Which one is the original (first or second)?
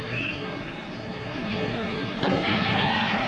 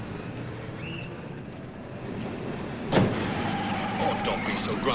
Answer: second